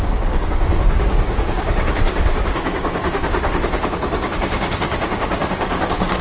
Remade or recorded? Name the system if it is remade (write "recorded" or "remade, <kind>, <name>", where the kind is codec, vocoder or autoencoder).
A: remade, codec, DAC